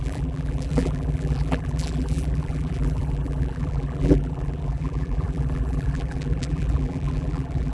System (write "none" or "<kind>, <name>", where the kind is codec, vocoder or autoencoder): vocoder, BigVGAN v2